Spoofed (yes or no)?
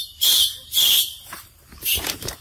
yes